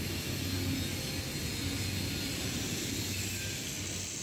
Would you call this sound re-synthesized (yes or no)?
no